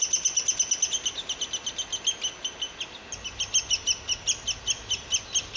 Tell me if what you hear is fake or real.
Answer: real